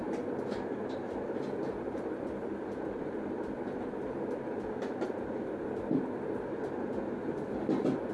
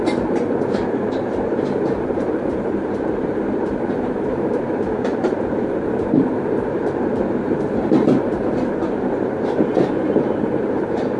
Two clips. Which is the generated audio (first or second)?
second